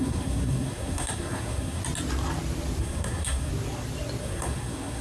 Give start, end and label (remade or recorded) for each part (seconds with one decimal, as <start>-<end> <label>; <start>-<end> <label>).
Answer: 0.0-1.8 remade; 1.8-2.8 recorded; 2.8-3.5 remade; 3.5-4.2 recorded; 4.2-5.0 remade